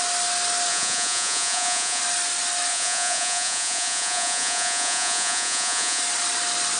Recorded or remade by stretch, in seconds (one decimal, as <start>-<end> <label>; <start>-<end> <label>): 0.0-0.7 recorded; 0.7-2.0 remade; 2.0-2.7 recorded; 2.7-6.0 remade; 6.0-6.8 recorded